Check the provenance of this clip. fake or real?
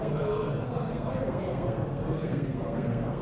fake